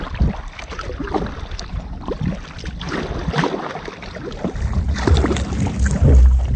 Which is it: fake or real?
real